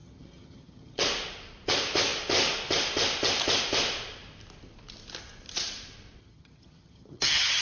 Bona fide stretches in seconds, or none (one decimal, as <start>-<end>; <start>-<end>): 1.0-6.2